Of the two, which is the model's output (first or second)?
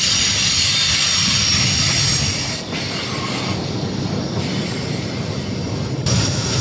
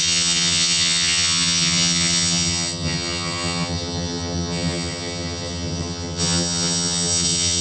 second